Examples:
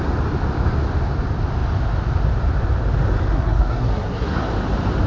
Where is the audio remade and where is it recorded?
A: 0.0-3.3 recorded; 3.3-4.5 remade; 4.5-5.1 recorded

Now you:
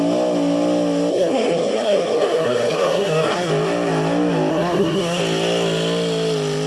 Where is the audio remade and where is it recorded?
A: 0.0-1.1 recorded; 1.1-3.5 remade; 3.5-4.5 recorded; 4.5-5.2 remade; 5.2-6.7 recorded

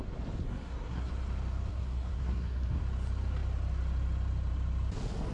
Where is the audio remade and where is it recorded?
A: 0.0-0.4 recorded; 0.4-1.1 remade; 1.1-1.7 recorded; 1.7-2.8 remade; 2.8-5.3 recorded

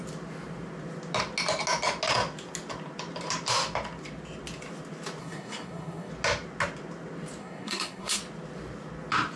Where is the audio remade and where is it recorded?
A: 0.0-5.2 recorded; 5.2-6.1 remade; 6.1-7.4 recorded; 7.4-8.2 remade; 8.2-9.4 recorded

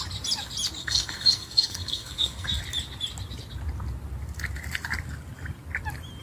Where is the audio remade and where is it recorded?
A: 0.0-0.8 recorded; 0.8-2.6 remade; 2.6-6.2 recorded

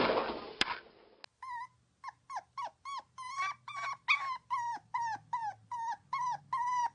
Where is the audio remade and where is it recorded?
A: 0.0-6.9 recorded

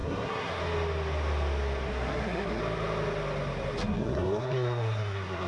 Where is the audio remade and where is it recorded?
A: 0.0-0.6 remade; 0.6-1.9 recorded; 1.9-2.6 remade; 2.6-3.8 recorded; 3.8-5.5 remade

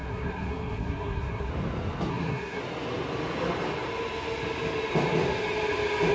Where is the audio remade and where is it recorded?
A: 0.0-1.5 remade; 1.5-2.1 recorded; 2.1-2.6 remade; 2.6-6.1 recorded